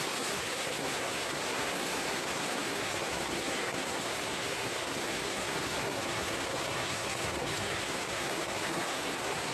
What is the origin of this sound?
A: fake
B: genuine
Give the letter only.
A